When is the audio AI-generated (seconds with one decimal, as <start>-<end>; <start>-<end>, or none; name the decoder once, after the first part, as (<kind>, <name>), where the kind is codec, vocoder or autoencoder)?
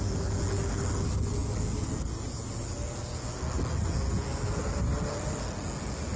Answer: none